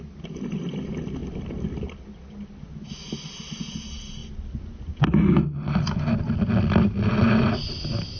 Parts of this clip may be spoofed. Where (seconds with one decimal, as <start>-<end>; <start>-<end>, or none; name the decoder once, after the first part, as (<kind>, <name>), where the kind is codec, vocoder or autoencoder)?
none